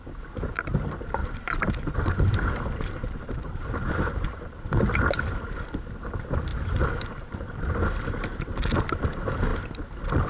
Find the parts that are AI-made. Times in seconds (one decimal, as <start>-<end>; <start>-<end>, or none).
1.2-4.7; 6.5-7.8